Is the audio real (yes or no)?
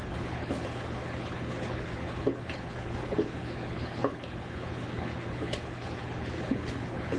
no